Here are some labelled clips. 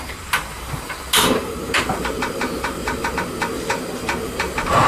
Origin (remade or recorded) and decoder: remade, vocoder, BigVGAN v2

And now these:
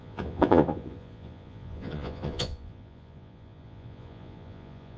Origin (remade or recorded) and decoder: remade, vocoder, Vocos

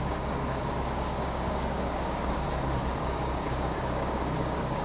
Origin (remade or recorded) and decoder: remade, codec, DAC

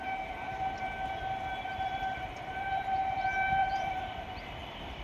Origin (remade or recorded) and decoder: remade, vocoder, BigVGAN v2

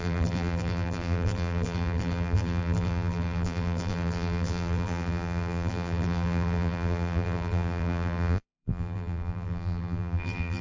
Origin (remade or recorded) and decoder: remade, vocoder, BigVGAN v2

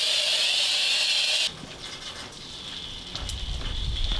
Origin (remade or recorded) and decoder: recorded